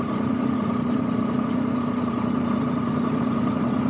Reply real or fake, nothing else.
fake